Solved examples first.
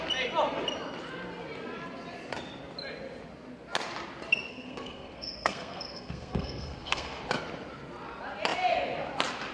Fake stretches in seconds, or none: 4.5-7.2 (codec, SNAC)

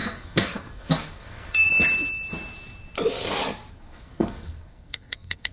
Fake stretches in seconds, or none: 0.0-1.7 (codec, SNAC); 3.7-5.5

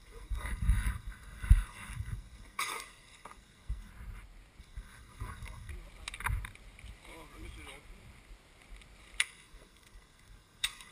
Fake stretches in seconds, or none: 0.0-3.9 (codec, SNAC); 4.6-5.7; 9.2-10.9

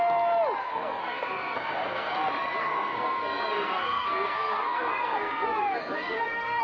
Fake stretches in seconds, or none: 0.6-2.1 (codec, SNAC); 2.6-6.6

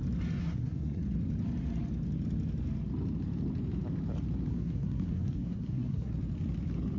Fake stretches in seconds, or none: 0.4-1.0 (codec, SNAC); 4.5-6.1

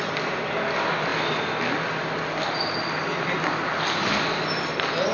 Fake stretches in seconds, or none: none

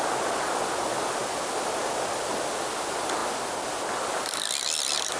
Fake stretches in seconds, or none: none

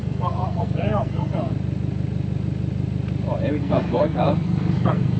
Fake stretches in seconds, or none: 0.0-1.5 (codec, SNAC); 3.6-5.2